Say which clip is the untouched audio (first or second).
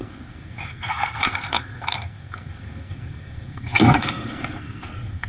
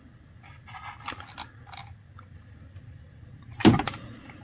second